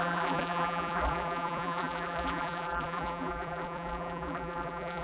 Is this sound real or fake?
fake